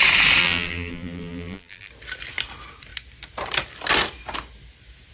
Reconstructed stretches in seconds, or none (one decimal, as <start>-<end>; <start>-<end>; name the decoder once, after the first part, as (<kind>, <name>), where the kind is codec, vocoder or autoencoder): 0.4-1.9 (vocoder, BigVGAN v2)